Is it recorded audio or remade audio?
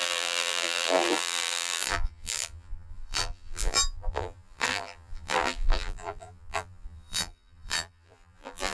remade